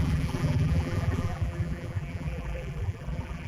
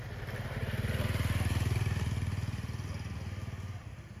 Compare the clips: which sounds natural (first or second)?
second